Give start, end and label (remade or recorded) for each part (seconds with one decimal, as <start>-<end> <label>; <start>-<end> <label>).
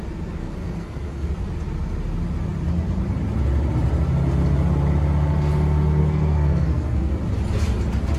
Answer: 0.0-0.4 recorded; 0.4-1.3 remade; 1.3-6.0 recorded; 6.0-7.1 remade; 7.1-8.2 recorded